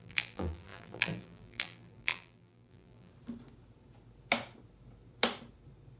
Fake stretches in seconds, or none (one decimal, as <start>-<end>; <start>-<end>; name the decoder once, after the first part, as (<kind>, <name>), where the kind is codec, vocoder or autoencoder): 0.0-3.1 (vocoder, BigVGAN v2)